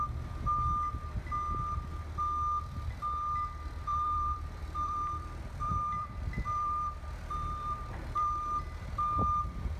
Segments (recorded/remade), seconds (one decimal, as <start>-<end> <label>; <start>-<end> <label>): 0.0-3.9 recorded; 3.9-8.6 remade; 8.6-9.8 recorded